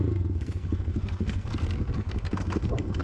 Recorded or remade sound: remade